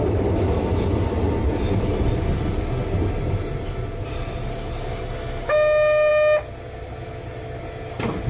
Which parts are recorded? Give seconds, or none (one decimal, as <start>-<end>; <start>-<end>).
0.0-8.3